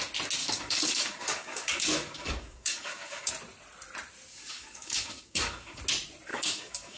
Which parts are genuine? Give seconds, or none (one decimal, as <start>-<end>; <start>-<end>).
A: 0.0-0.4; 3.3-4.3; 5.8-6.3